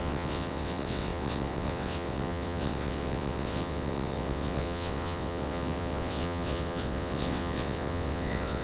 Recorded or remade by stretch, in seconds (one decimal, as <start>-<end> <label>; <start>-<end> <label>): 0.0-8.6 remade